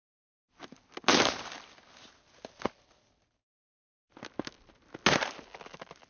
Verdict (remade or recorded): recorded